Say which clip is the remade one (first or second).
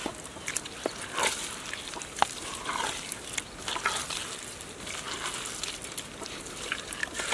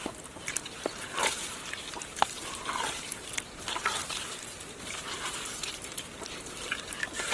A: second